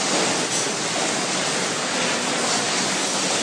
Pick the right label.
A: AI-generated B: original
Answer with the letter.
B